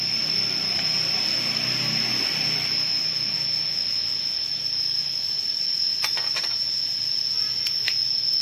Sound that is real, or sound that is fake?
real